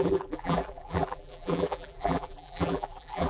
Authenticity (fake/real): fake